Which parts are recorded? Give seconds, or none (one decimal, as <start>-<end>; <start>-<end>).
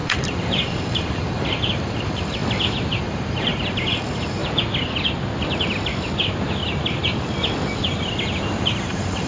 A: 2.4-3.0; 4.4-8.6